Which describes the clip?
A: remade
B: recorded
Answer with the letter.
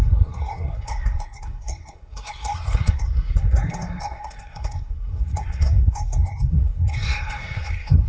A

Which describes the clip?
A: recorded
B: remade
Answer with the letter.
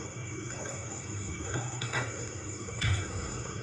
B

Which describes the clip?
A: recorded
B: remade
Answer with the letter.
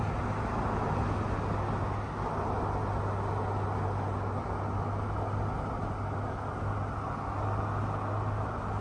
A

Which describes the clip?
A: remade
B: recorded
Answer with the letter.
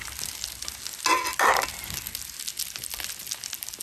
B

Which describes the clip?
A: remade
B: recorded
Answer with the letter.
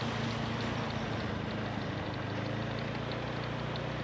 B